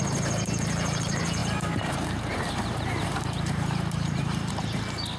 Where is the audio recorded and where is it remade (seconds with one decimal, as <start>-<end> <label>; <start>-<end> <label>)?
0.0-1.4 recorded; 1.4-4.5 remade; 4.5-5.2 recorded